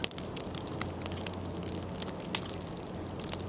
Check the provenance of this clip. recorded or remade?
recorded